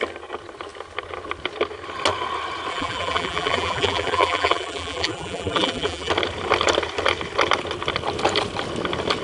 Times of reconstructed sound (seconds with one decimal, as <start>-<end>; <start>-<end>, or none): 2.7-6.1